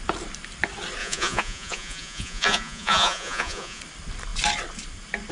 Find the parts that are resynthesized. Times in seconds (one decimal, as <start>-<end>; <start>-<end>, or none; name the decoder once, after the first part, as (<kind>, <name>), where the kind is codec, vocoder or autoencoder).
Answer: 1.0-3.8 (vocoder, Vocos)